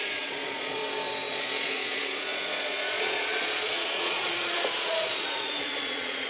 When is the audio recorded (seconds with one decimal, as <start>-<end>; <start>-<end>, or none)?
0.8-1.3